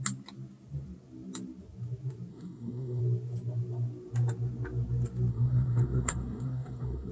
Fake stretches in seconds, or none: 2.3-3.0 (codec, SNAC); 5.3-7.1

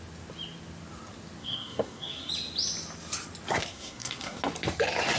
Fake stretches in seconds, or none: 1.4-2.3 (codec, SNAC); 3.7-4.4

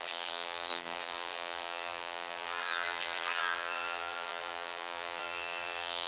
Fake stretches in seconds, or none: 0.0-6.1 (vocoder, BigVGAN v2)

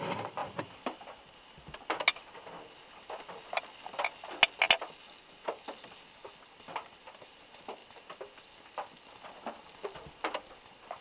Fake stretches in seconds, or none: none

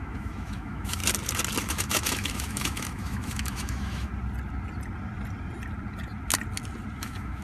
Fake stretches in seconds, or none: 0.0-1.0 (autoencoder, DAC-VAE); 1.6-4.1; 7.0-7.4

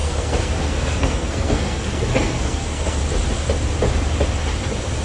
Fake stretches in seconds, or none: 0.0-3.0 (codec, SNAC)